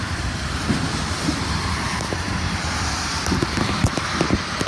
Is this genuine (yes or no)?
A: no